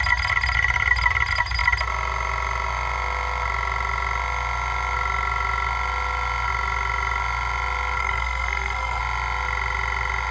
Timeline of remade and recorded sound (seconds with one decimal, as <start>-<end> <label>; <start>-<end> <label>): 0.0-8.0 recorded; 8.0-9.0 remade; 9.0-10.3 recorded